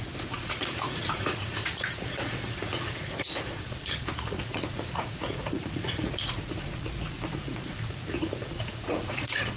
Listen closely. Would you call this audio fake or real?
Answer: fake